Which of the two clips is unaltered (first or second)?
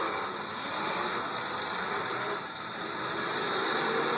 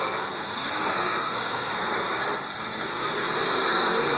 first